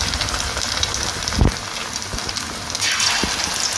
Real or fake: real